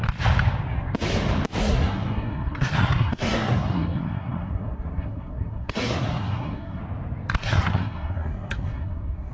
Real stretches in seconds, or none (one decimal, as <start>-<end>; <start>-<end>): 0.0-1.6; 6.8-7.4

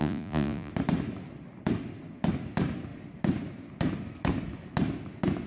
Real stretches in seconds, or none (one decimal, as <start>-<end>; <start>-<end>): 0.7-5.5